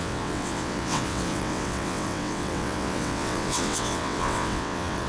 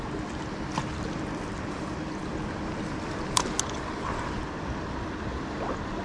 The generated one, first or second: first